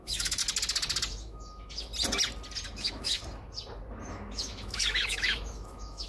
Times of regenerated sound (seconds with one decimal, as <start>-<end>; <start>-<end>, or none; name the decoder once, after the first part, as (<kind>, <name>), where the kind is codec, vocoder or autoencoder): 0.0-0.4 (autoencoder, DAC-VAE); 1.2-1.9; 2.7-3.2; 4.1-6.1